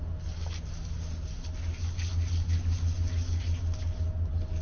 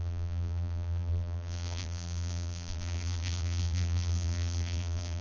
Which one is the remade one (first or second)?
second